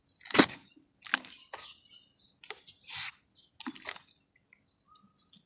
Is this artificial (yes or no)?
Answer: no